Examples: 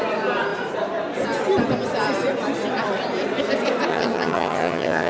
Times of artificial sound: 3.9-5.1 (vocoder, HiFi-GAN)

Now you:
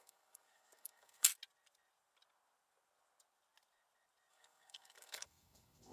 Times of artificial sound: 0.0-1.3 (codec, SNAC); 4.3-5.9

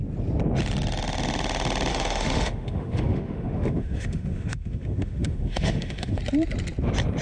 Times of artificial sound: 1.9-6.2 (autoencoder, DAC-VAE)

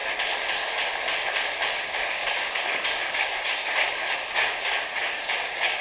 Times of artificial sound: 2.0-5.8 (codec, DAC)

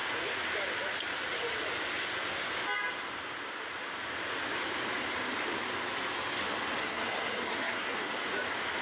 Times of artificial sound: 6.8-8.1 (codec, SNAC)